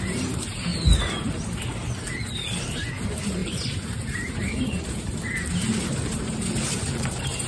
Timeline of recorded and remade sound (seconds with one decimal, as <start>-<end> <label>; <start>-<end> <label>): 0.0-0.7 remade; 0.7-2.8 recorded; 2.8-7.5 remade